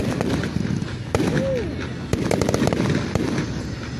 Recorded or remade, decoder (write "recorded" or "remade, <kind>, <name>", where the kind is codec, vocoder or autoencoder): recorded